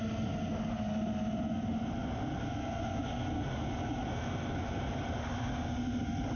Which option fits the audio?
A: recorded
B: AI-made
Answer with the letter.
A